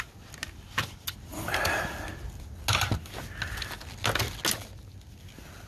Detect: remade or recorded recorded